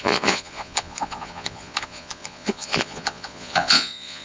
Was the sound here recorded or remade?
remade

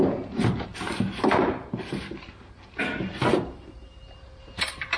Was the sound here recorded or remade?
remade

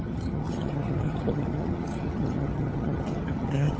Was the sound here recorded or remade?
remade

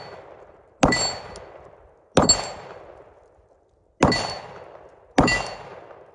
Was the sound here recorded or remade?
recorded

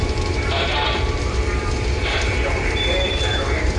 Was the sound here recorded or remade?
remade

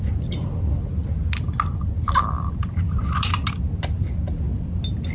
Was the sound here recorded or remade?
recorded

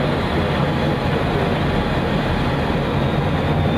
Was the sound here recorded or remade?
recorded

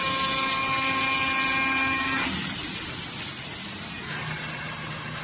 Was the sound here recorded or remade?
recorded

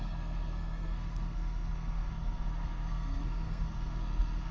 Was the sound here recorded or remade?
remade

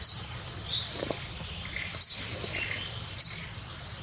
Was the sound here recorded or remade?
recorded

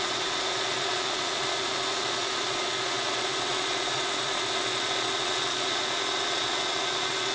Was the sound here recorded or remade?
remade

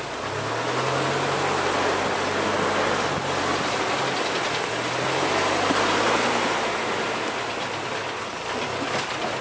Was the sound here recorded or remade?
recorded